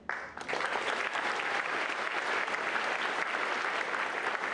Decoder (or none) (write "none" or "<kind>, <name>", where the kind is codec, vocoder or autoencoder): none